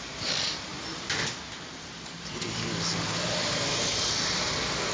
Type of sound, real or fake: fake